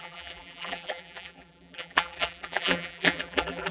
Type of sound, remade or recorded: remade